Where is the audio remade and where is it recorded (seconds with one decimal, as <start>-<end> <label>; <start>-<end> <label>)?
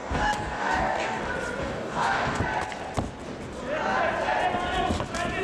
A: 0.0-1.2 remade; 1.2-1.6 recorded; 1.6-2.4 remade; 2.4-5.4 recorded